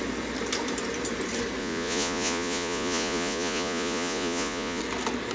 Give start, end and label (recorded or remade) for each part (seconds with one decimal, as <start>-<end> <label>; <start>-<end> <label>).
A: 0.0-1.6 recorded; 1.6-4.8 remade; 4.8-5.3 recorded